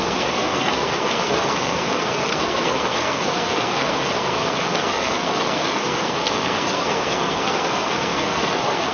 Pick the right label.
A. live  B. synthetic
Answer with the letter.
B